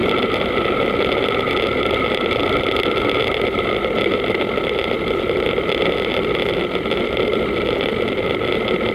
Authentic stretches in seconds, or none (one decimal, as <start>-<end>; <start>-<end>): 0.0-8.9